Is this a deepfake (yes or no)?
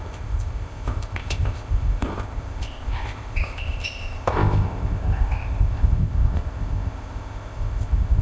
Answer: yes